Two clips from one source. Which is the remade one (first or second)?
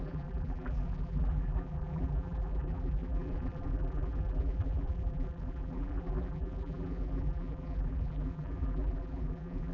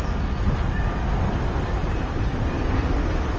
first